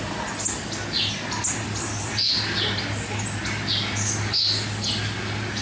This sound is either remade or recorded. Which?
recorded